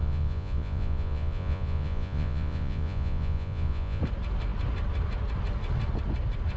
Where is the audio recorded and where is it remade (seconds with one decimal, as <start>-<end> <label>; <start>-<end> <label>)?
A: 0.0-4.0 remade; 4.0-6.6 recorded